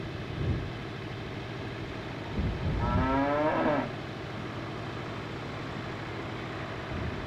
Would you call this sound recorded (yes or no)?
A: yes